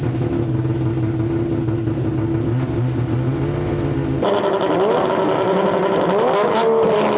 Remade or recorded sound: recorded